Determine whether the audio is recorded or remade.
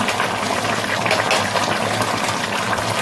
recorded